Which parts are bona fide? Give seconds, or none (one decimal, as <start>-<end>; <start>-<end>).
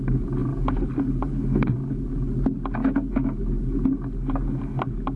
0.0-5.2